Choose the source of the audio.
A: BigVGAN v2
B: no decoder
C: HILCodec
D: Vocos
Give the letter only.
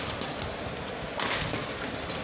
B